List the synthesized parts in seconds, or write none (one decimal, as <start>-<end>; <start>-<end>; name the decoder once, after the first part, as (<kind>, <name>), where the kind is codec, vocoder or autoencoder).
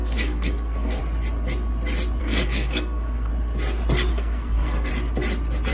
0.0-1.0 (codec, SNAC); 2.2-3.3; 4.1-4.9